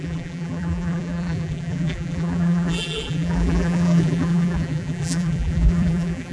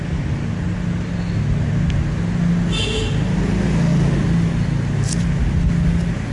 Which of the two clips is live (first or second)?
second